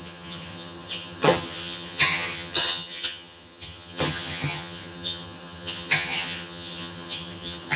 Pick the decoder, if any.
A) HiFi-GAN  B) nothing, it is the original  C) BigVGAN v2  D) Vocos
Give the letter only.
A